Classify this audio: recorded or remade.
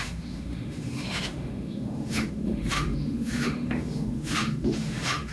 remade